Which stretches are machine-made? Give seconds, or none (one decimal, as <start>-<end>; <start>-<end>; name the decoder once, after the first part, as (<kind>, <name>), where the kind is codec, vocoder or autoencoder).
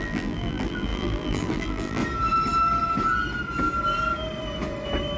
0.0-2.0 (vocoder, BigVGAN v2)